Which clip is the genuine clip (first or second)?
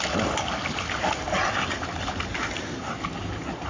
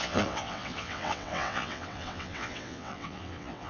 first